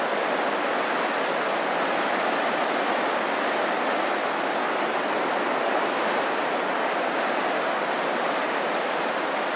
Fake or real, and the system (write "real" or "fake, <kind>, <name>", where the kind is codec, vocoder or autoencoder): real